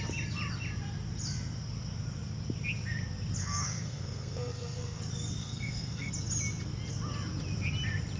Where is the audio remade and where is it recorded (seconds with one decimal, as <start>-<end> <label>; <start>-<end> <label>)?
0.0-3.4 recorded; 3.4-5.0 remade; 5.0-5.4 recorded; 5.4-6.1 remade; 6.1-8.2 recorded